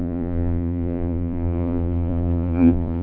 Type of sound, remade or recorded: remade